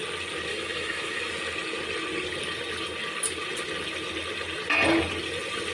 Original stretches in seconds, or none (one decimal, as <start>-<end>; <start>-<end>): 0.0-0.5; 1.3-5.7